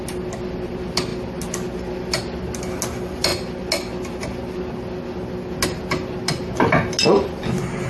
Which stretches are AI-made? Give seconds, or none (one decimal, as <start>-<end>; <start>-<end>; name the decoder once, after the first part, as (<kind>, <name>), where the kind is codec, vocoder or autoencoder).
none